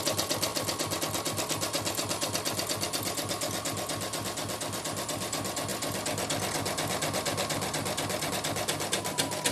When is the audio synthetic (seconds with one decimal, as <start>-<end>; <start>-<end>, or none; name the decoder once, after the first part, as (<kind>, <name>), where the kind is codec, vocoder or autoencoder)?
none

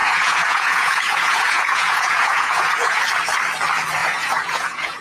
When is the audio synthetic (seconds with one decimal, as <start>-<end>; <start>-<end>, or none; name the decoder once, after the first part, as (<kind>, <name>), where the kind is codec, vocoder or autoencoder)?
0.0-3.0 (vocoder, Vocos); 4.0-5.0

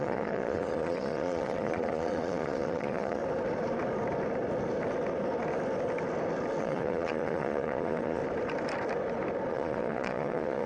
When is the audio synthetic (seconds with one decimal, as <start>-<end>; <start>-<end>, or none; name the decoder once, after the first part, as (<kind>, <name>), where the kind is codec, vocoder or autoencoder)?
0.0-3.2 (vocoder, Vocos); 6.6-8.2; 9.5-10.7

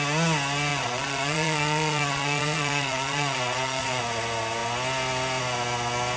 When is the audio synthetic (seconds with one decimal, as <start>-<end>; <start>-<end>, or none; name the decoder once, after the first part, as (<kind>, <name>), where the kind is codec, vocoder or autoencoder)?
0.7-4.0 (vocoder, Vocos)

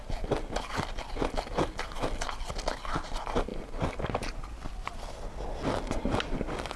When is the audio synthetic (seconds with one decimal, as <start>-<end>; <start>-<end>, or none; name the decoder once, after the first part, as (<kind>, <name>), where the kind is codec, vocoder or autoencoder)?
none

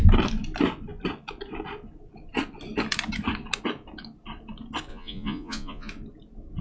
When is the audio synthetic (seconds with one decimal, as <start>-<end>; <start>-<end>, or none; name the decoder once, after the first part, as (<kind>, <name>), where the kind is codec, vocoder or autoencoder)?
4.9-5.9 (vocoder, Vocos)

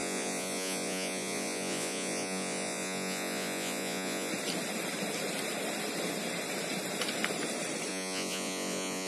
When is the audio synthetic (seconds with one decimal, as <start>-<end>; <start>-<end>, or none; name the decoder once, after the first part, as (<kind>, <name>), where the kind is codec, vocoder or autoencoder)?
0.0-4.3 (vocoder, Vocos); 7.9-9.1

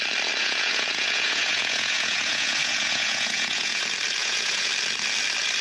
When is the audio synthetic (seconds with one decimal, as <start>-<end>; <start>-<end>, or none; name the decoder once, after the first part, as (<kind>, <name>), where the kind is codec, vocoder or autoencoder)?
0.4-3.8 (vocoder, Vocos); 4.2-4.7